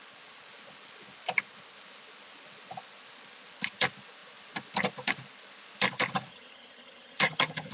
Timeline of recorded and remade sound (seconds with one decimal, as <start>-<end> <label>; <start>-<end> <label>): 0.0-6.3 recorded; 6.3-7.7 remade